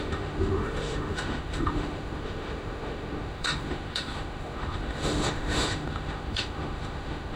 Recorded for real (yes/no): no